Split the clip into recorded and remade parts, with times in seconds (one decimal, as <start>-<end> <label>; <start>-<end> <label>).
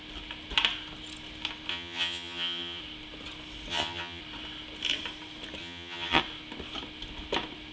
0.0-1.7 recorded; 1.7-2.8 remade; 2.8-3.7 recorded; 3.7-4.2 remade; 4.2-5.6 recorded; 5.6-6.2 remade; 6.2-7.7 recorded